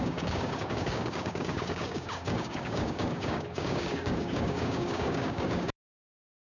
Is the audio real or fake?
fake